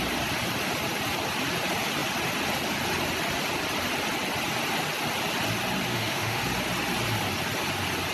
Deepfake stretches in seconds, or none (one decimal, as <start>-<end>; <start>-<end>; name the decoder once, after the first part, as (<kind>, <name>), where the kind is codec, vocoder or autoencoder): 5.9-6.4 (autoencoder, DAC-VAE)